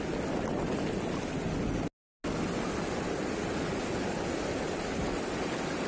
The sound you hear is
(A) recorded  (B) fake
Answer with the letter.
A